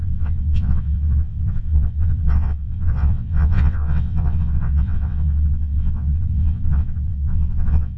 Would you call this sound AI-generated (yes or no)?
yes